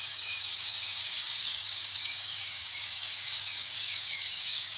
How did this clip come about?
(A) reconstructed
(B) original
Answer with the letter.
A